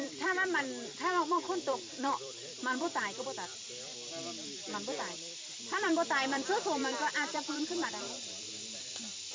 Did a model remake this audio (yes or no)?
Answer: yes